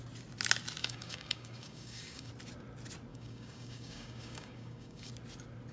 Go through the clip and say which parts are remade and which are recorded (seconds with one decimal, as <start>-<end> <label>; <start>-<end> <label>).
0.0-0.8 recorded; 0.8-2.3 remade; 2.3-3.1 recorded; 3.1-5.1 remade; 5.1-5.7 recorded